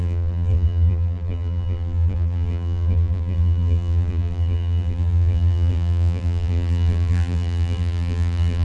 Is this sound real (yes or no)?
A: no